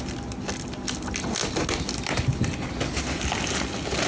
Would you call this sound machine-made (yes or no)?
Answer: no